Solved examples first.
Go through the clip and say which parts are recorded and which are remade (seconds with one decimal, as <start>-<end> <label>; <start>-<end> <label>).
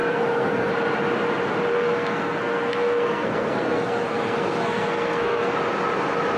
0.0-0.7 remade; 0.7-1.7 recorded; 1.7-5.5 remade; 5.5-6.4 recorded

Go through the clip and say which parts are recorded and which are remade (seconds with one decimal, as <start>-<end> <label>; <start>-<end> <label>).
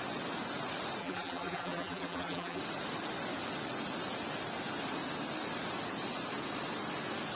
0.0-1.0 recorded; 1.0-2.6 remade; 2.6-7.4 recorded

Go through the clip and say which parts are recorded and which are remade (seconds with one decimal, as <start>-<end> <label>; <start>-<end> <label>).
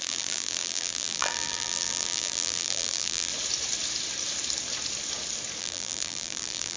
0.0-3.3 remade; 3.3-5.6 recorded; 5.6-6.8 remade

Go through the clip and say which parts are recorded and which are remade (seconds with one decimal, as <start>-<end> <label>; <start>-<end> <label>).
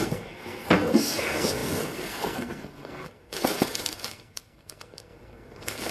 0.0-5.9 remade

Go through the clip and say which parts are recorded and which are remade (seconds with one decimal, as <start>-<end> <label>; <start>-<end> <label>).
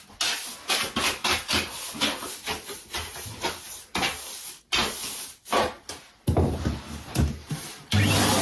0.0-8.4 recorded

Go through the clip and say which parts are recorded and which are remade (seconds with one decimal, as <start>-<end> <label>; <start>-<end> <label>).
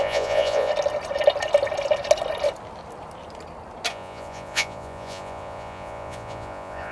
0.0-0.7 remade; 0.7-3.9 recorded; 3.9-6.9 remade